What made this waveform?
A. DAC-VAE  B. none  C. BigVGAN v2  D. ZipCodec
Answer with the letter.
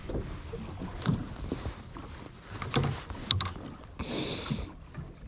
B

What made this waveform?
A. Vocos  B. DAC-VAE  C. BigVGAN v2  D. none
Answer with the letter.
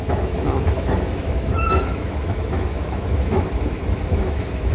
B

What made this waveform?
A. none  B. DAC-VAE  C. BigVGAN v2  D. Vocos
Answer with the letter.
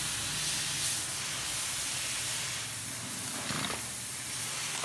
A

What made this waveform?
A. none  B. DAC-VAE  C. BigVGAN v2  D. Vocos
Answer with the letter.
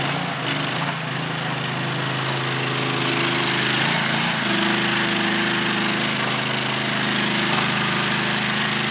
A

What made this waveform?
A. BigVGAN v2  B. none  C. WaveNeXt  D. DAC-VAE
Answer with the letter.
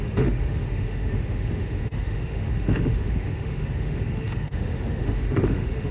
D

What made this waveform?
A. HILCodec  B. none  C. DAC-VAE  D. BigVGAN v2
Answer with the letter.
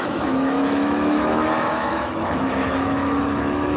C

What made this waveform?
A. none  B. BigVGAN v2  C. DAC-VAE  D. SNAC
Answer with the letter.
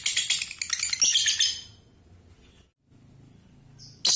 A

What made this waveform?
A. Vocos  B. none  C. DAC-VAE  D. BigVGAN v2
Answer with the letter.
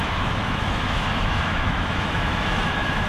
C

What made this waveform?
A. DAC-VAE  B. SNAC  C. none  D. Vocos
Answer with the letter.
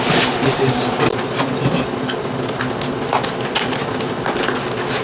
C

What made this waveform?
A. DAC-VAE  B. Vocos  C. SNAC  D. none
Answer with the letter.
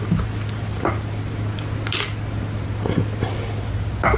D